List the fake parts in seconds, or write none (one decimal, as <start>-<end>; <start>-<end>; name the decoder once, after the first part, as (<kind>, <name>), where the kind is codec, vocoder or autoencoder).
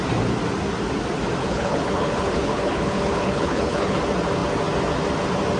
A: 1.4-4.0 (codec, HILCodec)